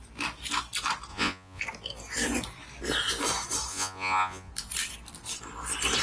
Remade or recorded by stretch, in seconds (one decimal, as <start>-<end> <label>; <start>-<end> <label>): 0.0-1.1 recorded; 1.1-1.6 remade; 1.6-3.7 recorded; 3.7-4.5 remade; 4.5-6.0 recorded